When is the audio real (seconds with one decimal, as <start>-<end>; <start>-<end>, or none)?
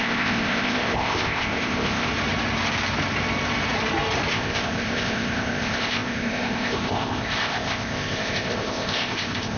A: 2.1-4.3